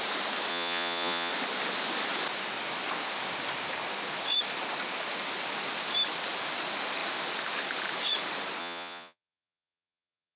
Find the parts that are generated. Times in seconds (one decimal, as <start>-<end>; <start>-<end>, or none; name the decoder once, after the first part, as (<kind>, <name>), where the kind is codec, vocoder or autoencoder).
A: 0.5-1.3 (vocoder, Vocos); 8.6-10.4